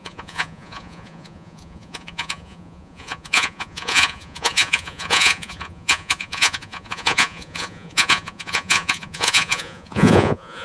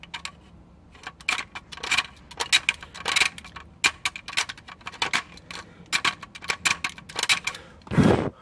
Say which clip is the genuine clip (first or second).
second